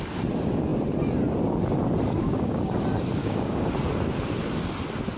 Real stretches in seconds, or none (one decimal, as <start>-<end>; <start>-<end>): 0.0-2.2; 2.8-3.2; 3.7-5.2